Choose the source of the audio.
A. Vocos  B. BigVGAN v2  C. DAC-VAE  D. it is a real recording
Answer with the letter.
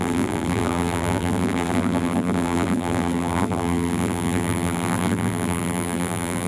B